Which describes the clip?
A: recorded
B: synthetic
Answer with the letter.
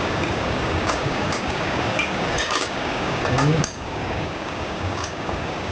B